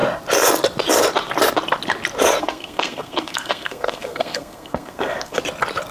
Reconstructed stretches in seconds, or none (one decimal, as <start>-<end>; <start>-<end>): 2.4-5.4